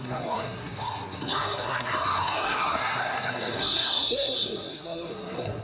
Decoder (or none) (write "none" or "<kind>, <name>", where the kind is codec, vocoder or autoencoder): codec, SNAC